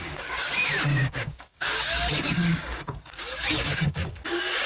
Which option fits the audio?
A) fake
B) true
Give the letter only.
A